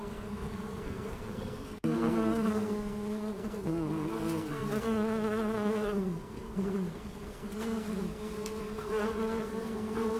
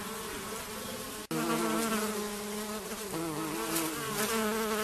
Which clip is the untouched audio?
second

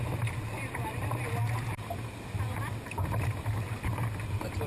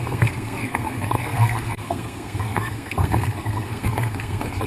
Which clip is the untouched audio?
first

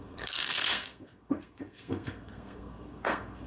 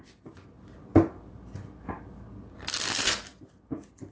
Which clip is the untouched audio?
second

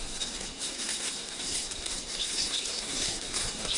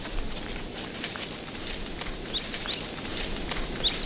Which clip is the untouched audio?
second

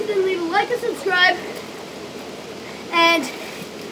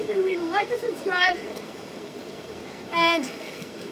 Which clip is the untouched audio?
first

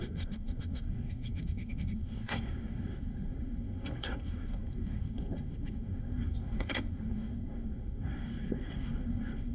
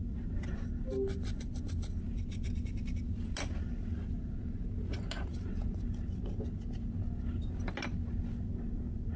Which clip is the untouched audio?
second